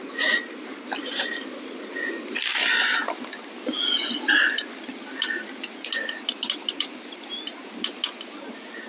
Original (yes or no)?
yes